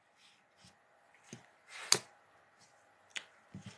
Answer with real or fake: real